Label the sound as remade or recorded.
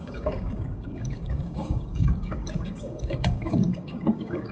remade